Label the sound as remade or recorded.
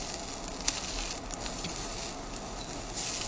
recorded